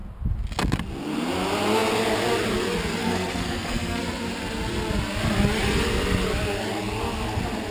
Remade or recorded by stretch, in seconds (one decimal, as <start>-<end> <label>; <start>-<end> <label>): 0.0-3.0 recorded; 3.0-4.0 remade; 4.0-7.7 recorded